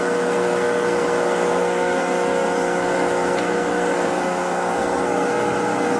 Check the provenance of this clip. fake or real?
fake